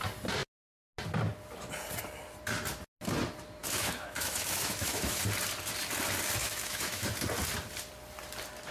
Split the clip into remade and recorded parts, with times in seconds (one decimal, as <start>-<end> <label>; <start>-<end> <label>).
0.0-3.6 recorded; 3.6-5.2 remade; 5.2-6.4 recorded; 6.4-7.1 remade; 7.1-8.7 recorded